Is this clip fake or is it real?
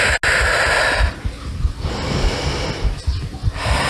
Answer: real